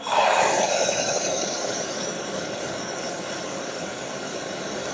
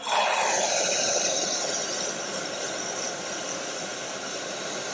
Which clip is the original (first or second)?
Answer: second